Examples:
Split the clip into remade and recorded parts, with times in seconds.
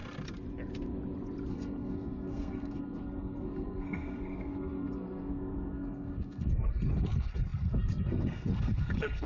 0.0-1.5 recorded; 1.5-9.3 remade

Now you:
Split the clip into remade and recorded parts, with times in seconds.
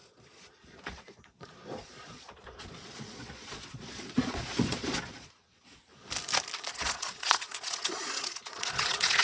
0.0-5.9 remade; 5.9-6.7 recorded; 6.7-9.2 remade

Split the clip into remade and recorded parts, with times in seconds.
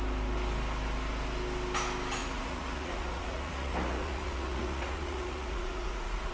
0.0-2.2 recorded; 2.2-6.3 remade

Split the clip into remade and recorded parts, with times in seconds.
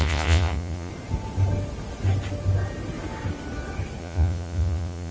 0.0-0.9 remade; 0.9-4.0 recorded; 4.0-5.1 remade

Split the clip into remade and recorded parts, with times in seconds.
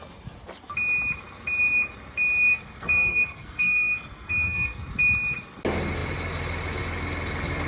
0.0-2.5 recorded; 2.5-4.8 remade; 4.8-7.7 recorded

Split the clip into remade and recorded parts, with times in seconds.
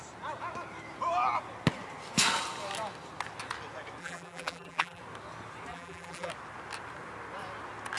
0.0-4.0 recorded; 4.0-5.0 remade; 5.0-5.7 recorded; 5.7-6.3 remade; 6.3-8.0 recorded